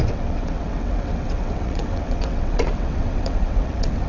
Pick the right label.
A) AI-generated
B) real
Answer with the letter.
A